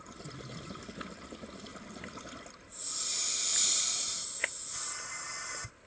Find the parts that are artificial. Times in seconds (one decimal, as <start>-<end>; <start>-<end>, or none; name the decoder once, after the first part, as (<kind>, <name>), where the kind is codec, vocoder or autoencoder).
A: none